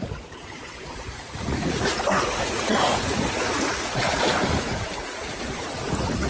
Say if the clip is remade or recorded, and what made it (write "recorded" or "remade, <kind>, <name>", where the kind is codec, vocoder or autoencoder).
remade, vocoder, Vocos